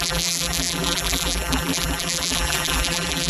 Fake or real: fake